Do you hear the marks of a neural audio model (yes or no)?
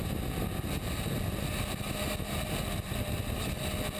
no